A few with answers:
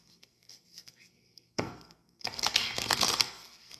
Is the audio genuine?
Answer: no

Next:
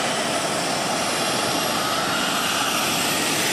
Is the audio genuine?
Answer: yes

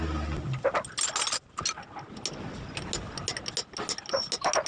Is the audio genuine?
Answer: yes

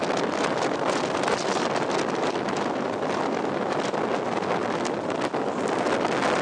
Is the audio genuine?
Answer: yes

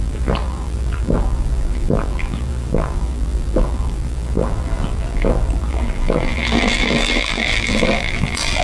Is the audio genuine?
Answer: no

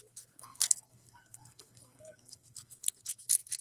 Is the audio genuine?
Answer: no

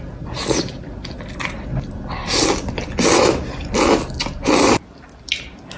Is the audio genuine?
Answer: yes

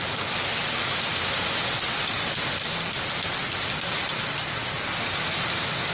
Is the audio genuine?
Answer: yes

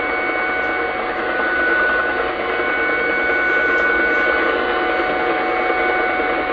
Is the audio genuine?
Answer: yes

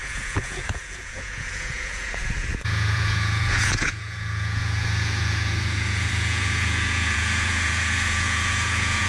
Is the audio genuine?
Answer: no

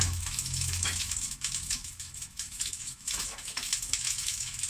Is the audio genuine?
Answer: no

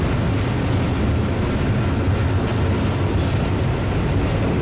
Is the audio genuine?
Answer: yes